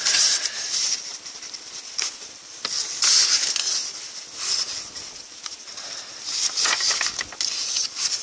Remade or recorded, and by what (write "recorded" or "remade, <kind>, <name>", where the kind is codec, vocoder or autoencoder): recorded